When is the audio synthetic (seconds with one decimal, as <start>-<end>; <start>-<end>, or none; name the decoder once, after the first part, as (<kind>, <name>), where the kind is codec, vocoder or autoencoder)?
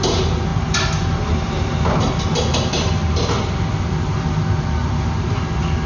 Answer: none